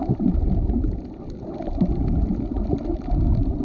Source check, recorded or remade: recorded